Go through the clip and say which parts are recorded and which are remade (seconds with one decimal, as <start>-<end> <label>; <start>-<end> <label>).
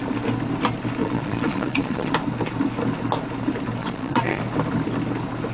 0.0-1.0 recorded; 1.0-2.1 remade; 2.1-3.8 recorded; 3.8-4.4 remade; 4.4-5.5 recorded